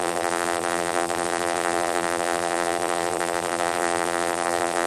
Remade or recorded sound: remade